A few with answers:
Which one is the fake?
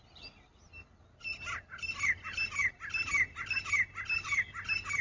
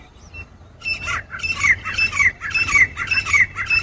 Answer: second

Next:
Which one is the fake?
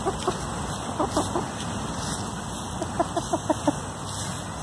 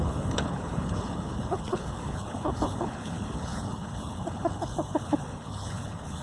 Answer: second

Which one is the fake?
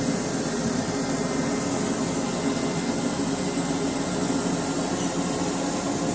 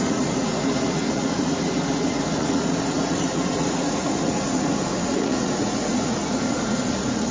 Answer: second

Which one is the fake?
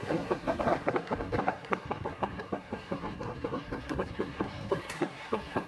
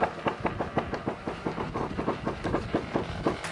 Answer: first